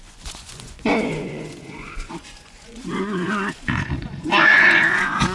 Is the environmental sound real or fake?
fake